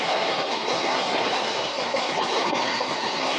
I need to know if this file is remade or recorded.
remade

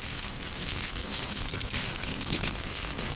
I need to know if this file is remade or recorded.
remade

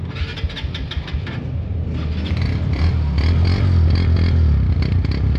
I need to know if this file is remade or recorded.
recorded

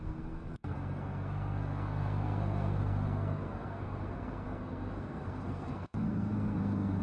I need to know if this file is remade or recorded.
remade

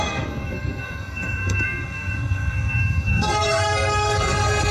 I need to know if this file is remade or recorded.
remade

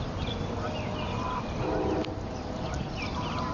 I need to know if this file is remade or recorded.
recorded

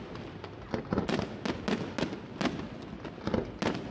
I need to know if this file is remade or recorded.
recorded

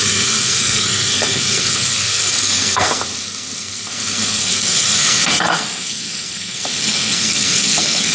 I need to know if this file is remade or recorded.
remade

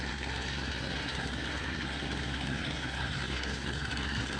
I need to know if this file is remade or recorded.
remade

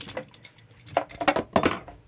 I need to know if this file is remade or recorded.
recorded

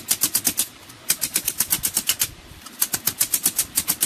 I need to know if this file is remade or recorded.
recorded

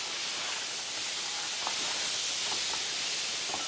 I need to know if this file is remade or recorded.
recorded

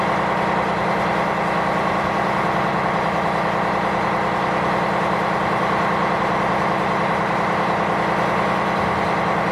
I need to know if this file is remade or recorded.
recorded